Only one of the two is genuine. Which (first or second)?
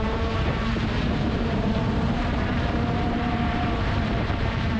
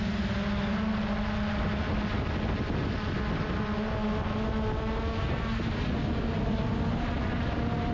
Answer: second